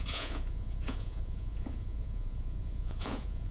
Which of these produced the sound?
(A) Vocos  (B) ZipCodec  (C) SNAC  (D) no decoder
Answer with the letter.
A